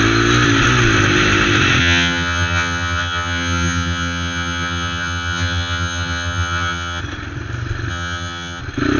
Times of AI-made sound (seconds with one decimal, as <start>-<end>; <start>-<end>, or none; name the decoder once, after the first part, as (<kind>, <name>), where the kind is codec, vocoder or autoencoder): 1.8-7.0 (vocoder, HiFi-GAN); 7.9-8.6